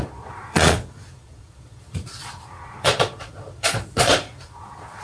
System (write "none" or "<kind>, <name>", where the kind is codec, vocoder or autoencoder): vocoder, Vocos